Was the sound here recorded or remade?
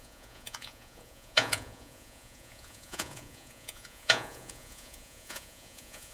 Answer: remade